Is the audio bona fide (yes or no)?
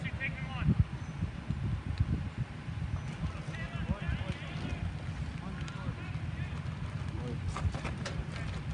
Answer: yes